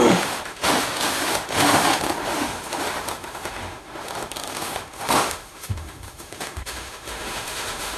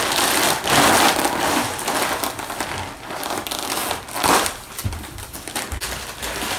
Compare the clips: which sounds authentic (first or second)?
second